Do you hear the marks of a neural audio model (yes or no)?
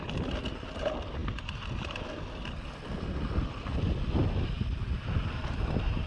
no